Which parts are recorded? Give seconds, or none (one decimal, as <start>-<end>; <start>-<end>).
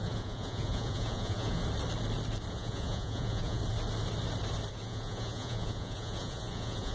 1.6-2.5; 3.6-4.7